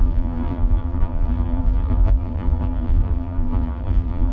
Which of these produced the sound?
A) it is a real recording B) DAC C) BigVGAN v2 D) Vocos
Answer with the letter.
C